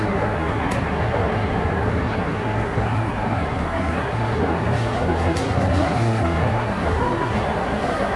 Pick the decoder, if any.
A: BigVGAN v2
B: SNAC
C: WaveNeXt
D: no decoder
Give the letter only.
B